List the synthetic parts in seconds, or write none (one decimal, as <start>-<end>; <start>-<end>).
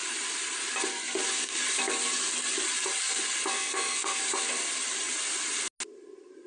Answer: 3.5-4.2